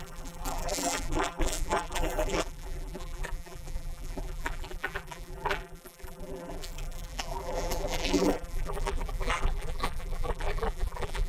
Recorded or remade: remade